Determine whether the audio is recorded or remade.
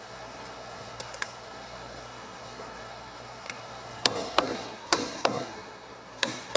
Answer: remade